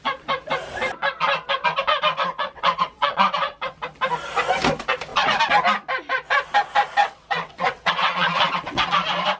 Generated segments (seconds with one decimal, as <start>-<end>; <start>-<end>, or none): 2.2-3.8; 7.0-8.8